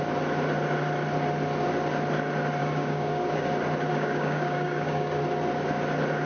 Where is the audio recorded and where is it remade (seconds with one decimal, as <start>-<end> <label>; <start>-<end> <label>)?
0.0-2.6 recorded; 2.6-3.5 remade; 3.5-3.9 recorded; 3.9-5.2 remade; 5.2-6.3 recorded